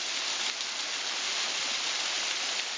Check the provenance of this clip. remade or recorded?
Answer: recorded